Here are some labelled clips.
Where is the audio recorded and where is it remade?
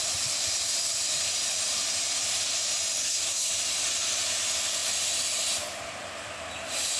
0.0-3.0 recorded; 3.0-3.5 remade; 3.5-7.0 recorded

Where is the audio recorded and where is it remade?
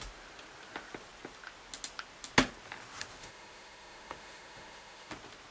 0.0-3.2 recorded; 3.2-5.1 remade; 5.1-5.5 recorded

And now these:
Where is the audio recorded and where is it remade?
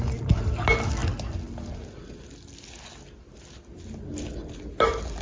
0.0-5.2 recorded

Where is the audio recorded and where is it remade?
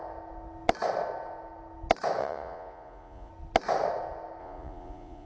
0.0-2.2 recorded; 2.2-3.3 remade; 3.3-4.4 recorded; 4.4-5.3 remade